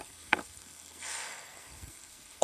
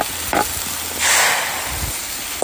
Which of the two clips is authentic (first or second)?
second